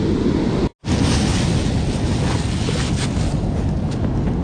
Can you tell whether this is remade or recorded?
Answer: recorded